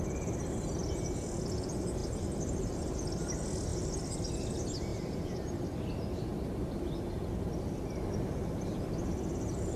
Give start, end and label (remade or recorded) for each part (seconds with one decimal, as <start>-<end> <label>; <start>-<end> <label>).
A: 0.0-2.0 recorded; 2.0-2.7 remade; 2.7-4.9 recorded; 4.9-5.7 remade; 5.7-9.8 recorded